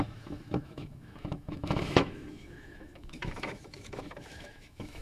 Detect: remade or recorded remade